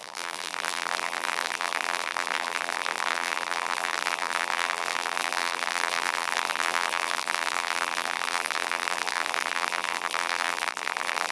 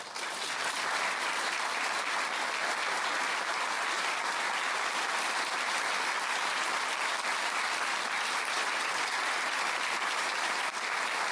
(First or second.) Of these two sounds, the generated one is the first